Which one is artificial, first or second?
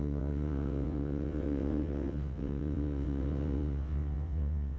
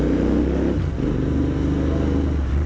first